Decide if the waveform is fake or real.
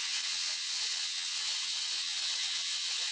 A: fake